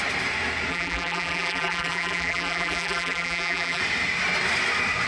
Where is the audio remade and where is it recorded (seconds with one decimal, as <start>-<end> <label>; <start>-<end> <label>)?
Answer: 0.0-0.7 recorded; 0.7-3.8 remade; 3.8-5.1 recorded